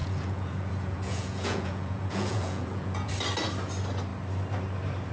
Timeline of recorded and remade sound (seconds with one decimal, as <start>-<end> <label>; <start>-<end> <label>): 0.0-3.1 remade; 3.1-5.1 recorded